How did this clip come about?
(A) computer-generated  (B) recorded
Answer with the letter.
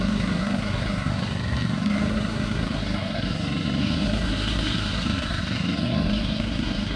A